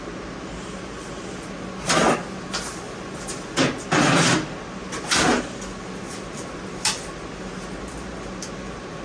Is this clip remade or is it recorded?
recorded